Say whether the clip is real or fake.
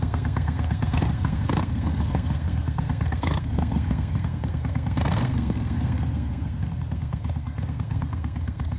fake